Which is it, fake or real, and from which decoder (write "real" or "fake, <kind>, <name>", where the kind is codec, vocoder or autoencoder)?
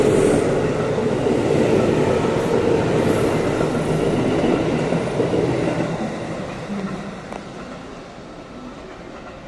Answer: real